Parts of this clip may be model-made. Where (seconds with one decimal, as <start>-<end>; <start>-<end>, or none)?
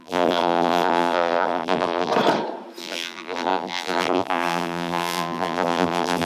0.0-2.1; 2.8-6.3